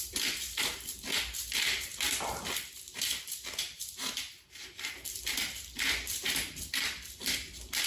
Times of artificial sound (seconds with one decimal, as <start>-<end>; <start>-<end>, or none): 0.0-7.9